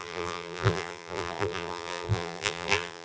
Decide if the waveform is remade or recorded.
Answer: remade